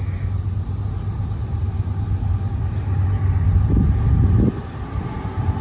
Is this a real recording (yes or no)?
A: yes